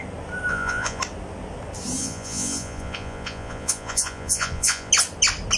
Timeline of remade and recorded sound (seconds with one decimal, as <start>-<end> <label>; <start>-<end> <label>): 0.0-0.5 recorded; 0.5-1.0 remade; 1.0-2.0 recorded; 2.0-4.9 remade; 4.9-5.6 recorded